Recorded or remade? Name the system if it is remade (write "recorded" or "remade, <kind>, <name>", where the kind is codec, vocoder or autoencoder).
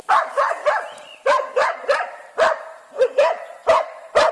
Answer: recorded